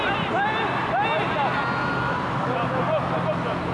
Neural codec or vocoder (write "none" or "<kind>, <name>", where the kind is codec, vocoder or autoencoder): none